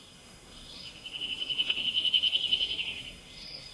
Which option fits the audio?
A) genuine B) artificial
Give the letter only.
B